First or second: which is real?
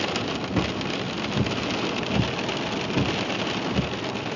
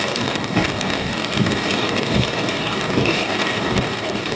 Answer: first